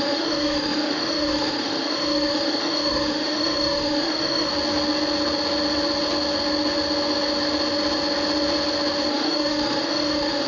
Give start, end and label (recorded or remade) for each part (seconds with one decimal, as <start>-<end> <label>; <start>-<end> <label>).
0.0-4.5 remade; 4.5-9.1 recorded; 9.1-10.5 remade